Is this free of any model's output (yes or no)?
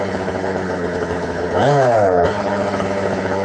no